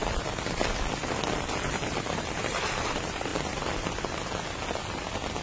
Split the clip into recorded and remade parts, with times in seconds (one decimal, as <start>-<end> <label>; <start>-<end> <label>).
0.0-0.9 remade; 0.9-3.3 recorded; 3.3-4.2 remade; 4.2-5.4 recorded